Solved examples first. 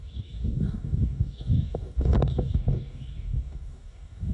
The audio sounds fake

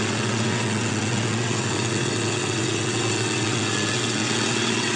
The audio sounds fake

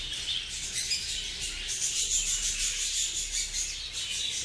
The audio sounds real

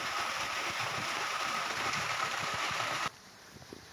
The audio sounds fake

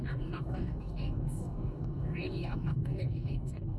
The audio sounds fake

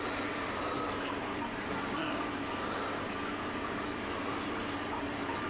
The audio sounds real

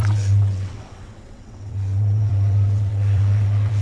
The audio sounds fake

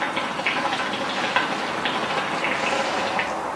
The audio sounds real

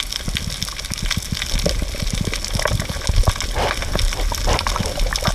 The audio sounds real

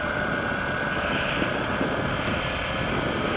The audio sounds real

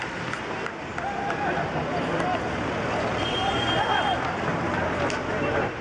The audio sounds real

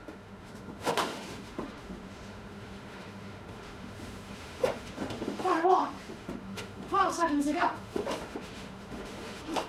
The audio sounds fake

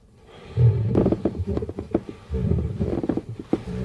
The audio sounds real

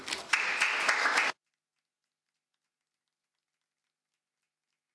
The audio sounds real